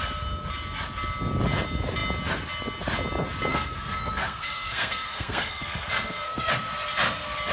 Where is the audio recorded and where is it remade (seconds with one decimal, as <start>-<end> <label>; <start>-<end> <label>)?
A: 0.0-3.5 recorded; 3.5-6.5 remade; 6.5-7.5 recorded